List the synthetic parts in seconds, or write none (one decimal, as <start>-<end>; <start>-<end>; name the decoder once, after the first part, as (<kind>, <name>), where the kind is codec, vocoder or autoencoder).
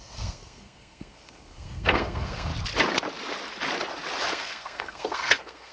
0.0-2.5 (codec, SNAC); 4.3-5.7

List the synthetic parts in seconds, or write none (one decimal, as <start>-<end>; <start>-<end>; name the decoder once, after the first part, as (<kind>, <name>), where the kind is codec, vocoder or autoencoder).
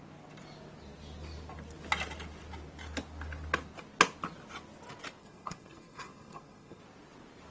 5.2-6.8 (codec, SNAC)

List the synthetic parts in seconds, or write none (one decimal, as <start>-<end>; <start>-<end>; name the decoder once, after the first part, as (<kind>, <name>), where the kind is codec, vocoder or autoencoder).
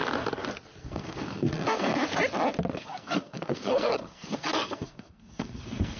0.8-1.9 (codec, SNAC); 2.7-6.0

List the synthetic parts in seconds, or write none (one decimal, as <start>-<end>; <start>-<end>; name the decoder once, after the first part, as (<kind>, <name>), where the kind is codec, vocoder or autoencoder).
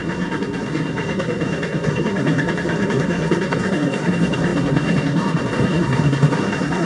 0.0-6.9 (codec, SNAC)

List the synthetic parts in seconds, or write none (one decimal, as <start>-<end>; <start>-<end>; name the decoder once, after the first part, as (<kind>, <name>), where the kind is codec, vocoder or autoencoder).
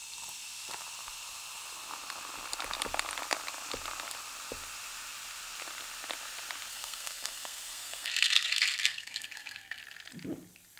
6.7-9.8 (codec, SNAC)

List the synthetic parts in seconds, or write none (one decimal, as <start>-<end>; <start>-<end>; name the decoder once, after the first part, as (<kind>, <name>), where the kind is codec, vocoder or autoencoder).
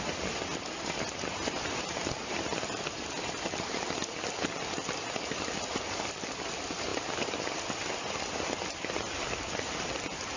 none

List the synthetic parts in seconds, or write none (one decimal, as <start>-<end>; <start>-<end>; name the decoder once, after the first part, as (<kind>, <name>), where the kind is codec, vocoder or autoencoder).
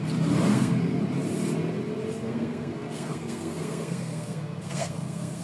0.5-1.0 (codec, SNAC); 2.2-5.4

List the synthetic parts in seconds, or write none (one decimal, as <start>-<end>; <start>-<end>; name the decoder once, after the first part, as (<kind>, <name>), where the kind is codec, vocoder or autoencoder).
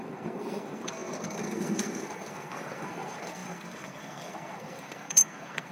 0.0-5.7 (codec, SNAC)